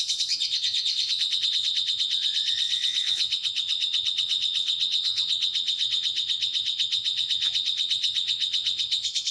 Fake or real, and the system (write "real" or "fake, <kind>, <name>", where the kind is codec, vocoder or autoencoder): fake, vocoder, WaveNeXt